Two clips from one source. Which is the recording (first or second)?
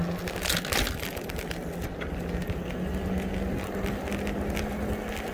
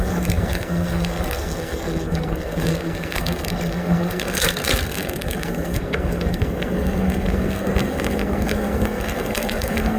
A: first